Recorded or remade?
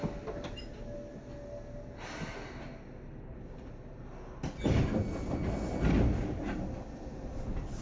recorded